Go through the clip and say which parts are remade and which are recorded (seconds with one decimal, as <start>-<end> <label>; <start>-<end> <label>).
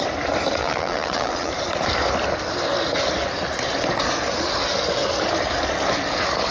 0.0-0.6 recorded; 0.6-1.5 remade; 1.5-6.5 recorded